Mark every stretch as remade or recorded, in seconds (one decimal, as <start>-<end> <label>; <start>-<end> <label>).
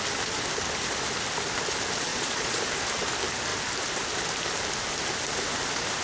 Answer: 0.0-2.1 recorded; 2.1-2.6 remade; 2.6-6.0 recorded